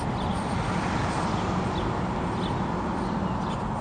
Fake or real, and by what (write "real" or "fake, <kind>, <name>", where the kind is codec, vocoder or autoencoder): real